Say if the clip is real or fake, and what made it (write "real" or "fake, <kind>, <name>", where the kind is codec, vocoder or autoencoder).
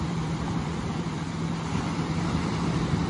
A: fake, vocoder, BigVGAN v2